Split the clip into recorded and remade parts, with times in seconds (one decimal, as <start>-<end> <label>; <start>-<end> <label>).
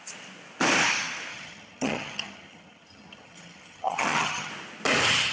0.0-1.3 recorded; 1.3-4.5 remade; 4.5-5.3 recorded